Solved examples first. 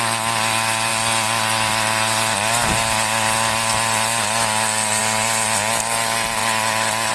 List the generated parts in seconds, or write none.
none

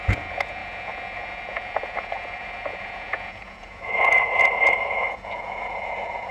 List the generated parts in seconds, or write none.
0.0-6.3 (vocoder, Vocos)

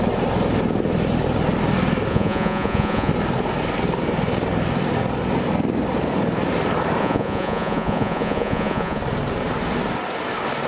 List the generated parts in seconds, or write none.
2.1-3.1 (vocoder, Vocos); 7.0-9.0

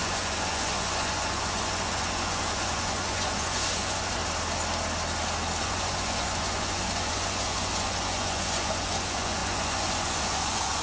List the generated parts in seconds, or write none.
0.0-4.2 (vocoder, Vocos); 5.6-10.8

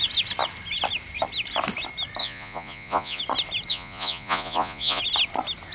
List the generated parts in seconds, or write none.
2.2-3.2 (vocoder, Vocos); 3.7-5.0

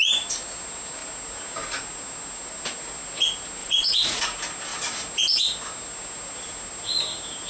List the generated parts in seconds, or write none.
3.6-4.2 (vocoder, Vocos)

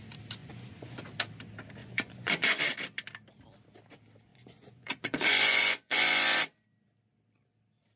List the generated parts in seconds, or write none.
0.4-1.0 (vocoder, Vocos); 1.8-2.6; 4.3-6.4